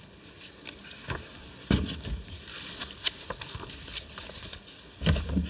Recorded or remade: remade